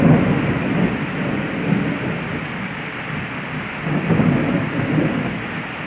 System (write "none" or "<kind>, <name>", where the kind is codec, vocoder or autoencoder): none